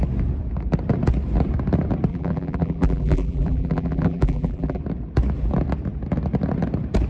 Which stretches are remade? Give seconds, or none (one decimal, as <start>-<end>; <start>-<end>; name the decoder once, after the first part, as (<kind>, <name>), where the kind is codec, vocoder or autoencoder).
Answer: 2.1-4.8 (vocoder, BigVGAN v2)